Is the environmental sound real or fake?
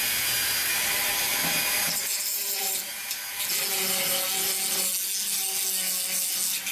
real